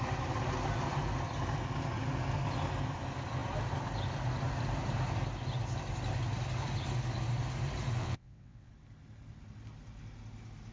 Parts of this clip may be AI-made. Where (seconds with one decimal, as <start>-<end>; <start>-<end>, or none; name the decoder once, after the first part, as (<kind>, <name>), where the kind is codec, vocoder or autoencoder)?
8.0-8.7 (vocoder, WaveNeXt)